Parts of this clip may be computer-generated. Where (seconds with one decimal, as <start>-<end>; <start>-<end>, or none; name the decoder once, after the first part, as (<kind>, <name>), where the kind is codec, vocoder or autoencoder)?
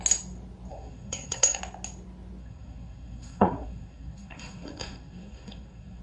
0.7-1.6 (codec, SNAC); 2.4-6.0